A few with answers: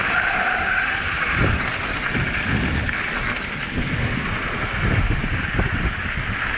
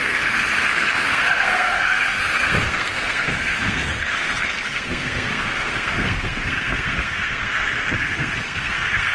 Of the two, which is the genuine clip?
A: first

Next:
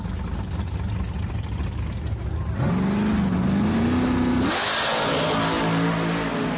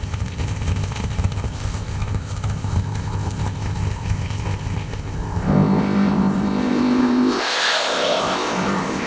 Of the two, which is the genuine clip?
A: first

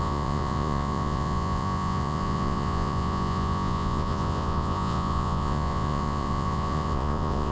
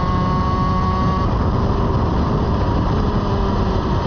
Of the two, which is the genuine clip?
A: second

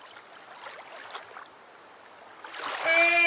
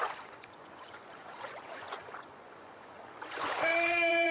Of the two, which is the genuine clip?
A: first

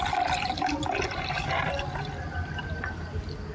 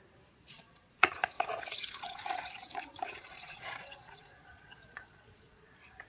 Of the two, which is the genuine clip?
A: first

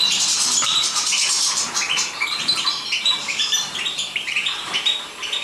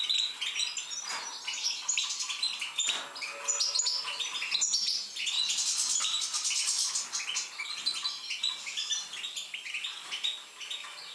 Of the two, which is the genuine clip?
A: second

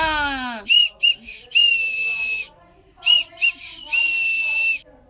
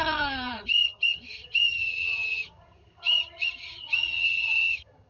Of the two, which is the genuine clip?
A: first